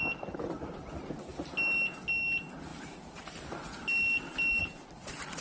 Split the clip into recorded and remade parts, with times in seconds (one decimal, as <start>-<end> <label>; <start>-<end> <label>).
0.0-5.4 recorded